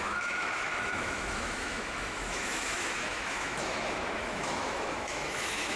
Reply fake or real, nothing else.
fake